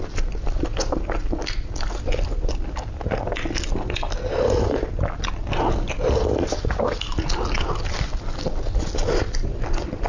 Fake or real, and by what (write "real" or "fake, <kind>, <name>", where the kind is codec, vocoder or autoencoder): real